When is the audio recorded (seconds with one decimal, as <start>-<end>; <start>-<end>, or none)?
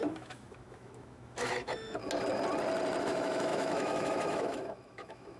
2.0-3.0